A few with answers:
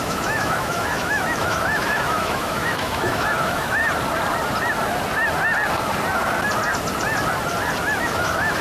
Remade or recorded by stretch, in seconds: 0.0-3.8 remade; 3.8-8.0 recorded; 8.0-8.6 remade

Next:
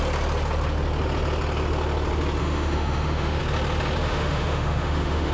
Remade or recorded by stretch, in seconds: 0.0-2.4 recorded; 2.4-3.4 remade; 3.4-4.0 recorded; 4.0-5.3 remade

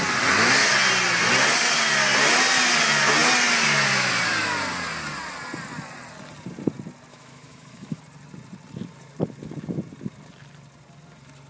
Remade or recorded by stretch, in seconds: 0.0-7.1 recorded; 7.1-8.0 remade; 8.0-11.5 recorded